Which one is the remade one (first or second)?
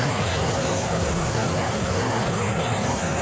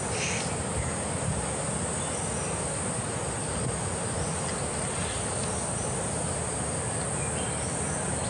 first